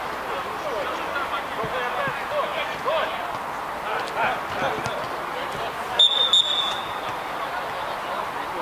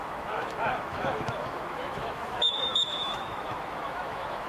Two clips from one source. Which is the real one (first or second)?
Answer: first